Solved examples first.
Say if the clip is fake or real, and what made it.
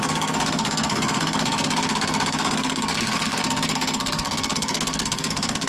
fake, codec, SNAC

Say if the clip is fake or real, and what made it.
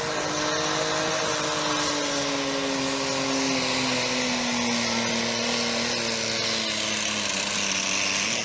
real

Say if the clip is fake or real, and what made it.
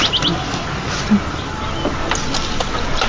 real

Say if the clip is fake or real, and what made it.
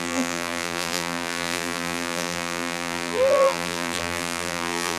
fake, vocoder, BigVGAN v2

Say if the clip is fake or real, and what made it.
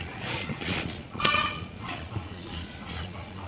fake, vocoder, Vocos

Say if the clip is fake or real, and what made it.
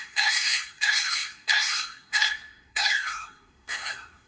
fake, codec, SNAC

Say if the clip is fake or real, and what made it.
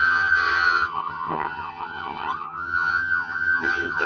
fake, vocoder, HiFi-GAN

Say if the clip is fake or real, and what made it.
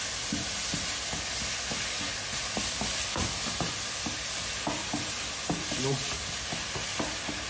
real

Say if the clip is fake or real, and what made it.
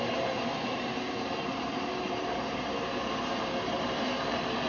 fake, vocoder, BigVGAN v2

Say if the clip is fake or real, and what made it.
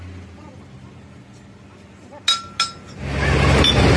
real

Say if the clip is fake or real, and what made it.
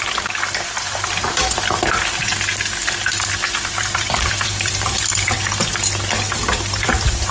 fake, vocoder, BigVGAN v2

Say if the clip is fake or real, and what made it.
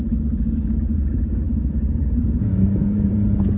fake, vocoder, Vocos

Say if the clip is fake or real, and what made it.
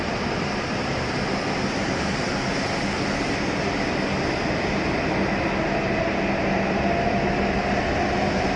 real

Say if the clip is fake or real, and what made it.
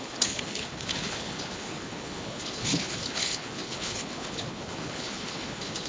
fake, codec, HILCodec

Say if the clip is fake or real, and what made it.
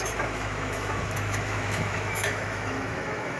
fake, autoencoder, DAC-VAE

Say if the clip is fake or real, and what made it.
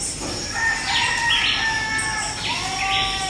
real